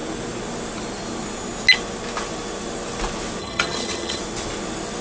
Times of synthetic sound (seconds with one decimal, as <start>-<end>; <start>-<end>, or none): 3.4-4.2